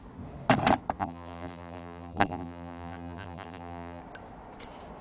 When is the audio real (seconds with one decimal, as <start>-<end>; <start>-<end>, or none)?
0.0-1.0; 4.0-5.0